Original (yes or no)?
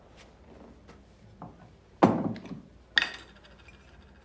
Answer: yes